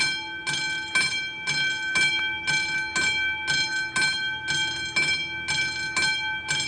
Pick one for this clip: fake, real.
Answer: real